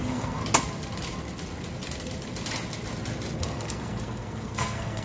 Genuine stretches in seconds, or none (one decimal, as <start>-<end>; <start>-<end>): 0.4-3.4